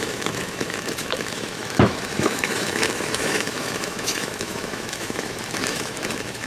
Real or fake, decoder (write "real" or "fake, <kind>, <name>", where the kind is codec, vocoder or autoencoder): fake, autoencoder, DAC-VAE